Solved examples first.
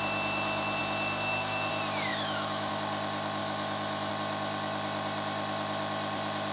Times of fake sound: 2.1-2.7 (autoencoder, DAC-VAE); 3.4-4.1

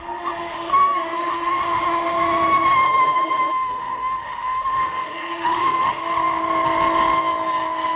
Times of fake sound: 0.0-6.0 (autoencoder, DAC-VAE)

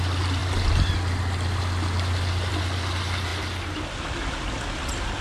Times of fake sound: none